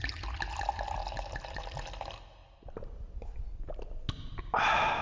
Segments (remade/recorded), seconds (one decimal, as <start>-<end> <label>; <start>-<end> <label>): 0.0-5.0 recorded